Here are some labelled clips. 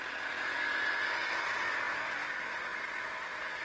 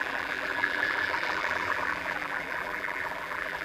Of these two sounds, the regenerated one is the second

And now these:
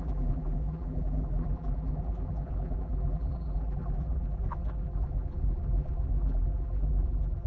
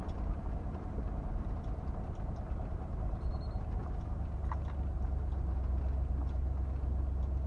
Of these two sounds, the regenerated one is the first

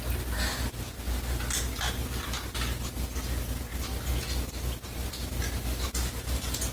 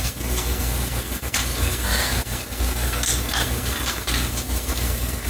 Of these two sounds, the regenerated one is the second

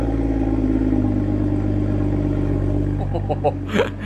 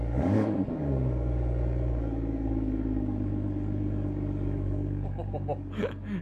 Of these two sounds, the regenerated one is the second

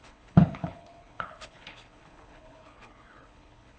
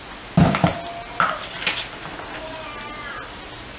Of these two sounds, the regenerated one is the first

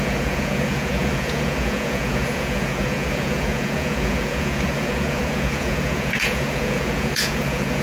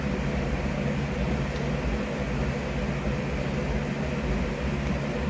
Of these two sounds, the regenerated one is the first